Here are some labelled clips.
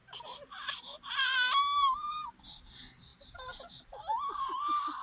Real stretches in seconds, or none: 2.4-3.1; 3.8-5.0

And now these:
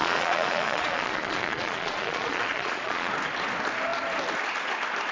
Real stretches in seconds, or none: 3.1-5.1

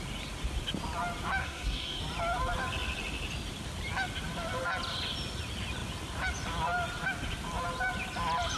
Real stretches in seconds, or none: 0.0-1.4; 2.0-8.6

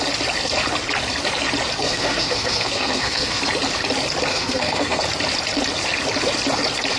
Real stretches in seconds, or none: 0.0-1.8; 3.4-4.3; 5.0-7.0